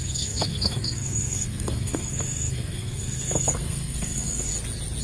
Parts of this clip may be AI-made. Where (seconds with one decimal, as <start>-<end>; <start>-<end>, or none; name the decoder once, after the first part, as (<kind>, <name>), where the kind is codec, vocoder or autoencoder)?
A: 0.0-4.5 (codec, SNAC)